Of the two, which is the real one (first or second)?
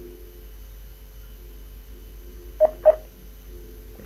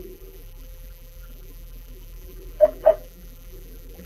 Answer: first